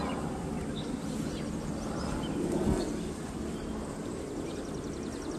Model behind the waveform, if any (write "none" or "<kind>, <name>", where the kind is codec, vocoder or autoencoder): none